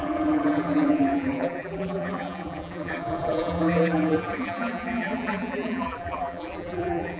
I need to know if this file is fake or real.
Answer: fake